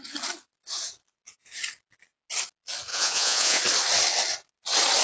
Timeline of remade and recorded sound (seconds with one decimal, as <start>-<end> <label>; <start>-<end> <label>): 0.0-2.9 recorded; 2.9-3.6 remade; 3.6-5.0 recorded